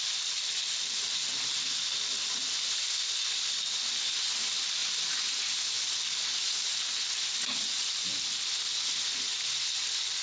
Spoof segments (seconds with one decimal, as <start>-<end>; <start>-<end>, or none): none